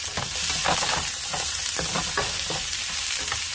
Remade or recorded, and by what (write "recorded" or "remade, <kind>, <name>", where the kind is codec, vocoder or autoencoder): recorded